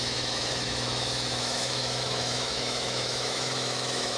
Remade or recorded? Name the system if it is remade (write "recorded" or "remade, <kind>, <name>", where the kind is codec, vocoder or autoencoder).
remade, autoencoder, DAC-VAE